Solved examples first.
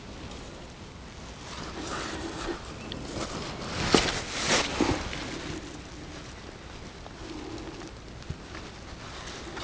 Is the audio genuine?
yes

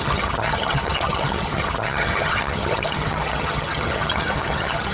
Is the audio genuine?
no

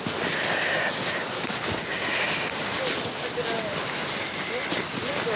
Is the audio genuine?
yes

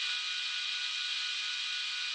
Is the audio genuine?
yes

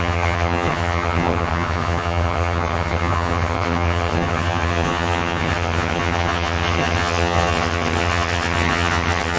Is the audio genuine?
no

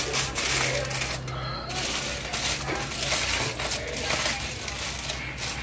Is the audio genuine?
yes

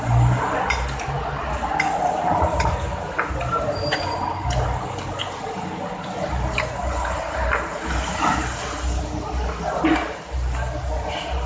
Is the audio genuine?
yes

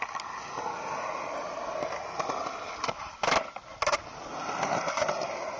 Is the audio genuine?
yes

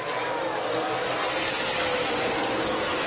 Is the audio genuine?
yes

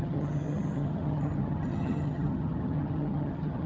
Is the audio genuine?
no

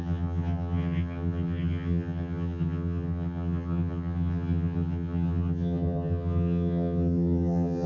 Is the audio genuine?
no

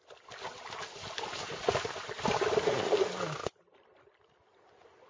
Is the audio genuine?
yes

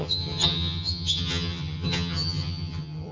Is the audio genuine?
no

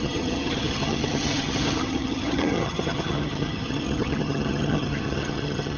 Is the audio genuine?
no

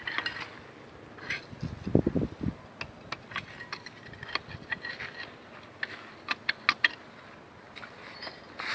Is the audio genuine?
yes